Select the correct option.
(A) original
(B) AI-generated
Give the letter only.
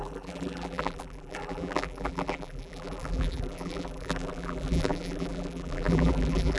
B